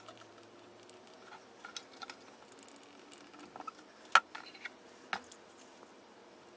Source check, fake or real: real